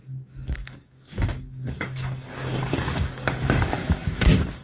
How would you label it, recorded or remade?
remade